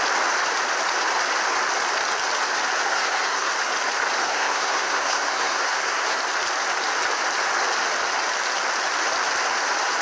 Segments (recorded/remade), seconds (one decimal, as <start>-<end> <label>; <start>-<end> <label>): 0.0-2.9 recorded; 2.9-3.5 remade; 3.5-4.2 recorded; 4.2-6.2 remade; 6.2-10.0 recorded